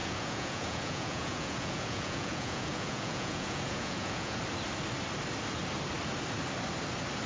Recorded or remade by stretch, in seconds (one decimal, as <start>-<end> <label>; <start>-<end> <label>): 0.0-4.4 remade; 4.4-7.3 recorded